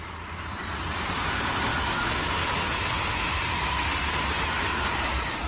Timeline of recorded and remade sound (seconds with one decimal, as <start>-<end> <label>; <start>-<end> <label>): 0.0-1.7 remade; 1.7-3.7 recorded; 3.7-5.5 remade